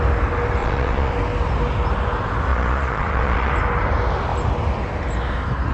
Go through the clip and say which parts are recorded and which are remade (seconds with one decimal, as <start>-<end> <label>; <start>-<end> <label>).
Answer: 0.0-0.6 recorded; 0.6-1.1 remade; 1.1-2.5 recorded; 2.5-3.5 remade; 3.5-5.7 recorded